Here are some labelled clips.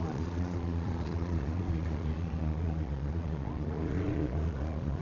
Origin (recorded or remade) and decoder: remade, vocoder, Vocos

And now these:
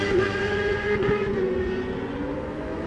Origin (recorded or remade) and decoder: remade, vocoder, Vocos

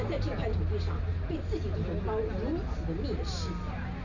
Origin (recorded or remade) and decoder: recorded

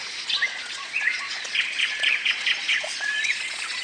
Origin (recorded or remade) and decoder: remade, vocoder, Vocos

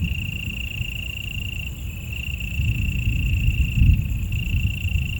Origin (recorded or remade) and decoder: recorded